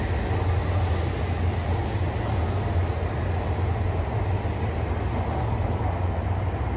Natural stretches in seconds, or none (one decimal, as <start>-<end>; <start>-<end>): 0.0-6.8